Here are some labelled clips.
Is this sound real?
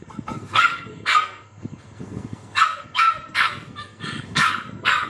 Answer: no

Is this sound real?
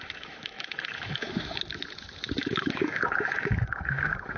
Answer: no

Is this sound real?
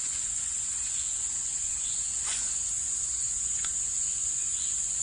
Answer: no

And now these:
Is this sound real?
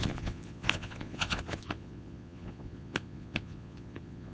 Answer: no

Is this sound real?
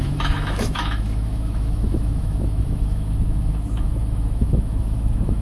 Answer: no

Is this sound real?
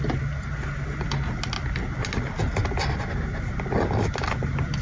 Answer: yes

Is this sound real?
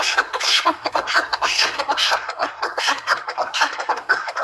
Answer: no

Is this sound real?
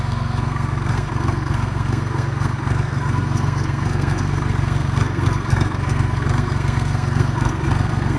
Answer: no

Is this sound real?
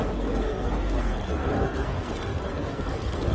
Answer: no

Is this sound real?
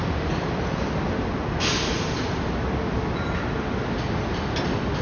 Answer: yes